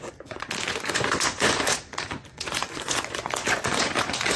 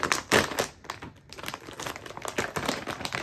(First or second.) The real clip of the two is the second